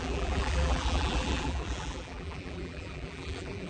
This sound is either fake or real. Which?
fake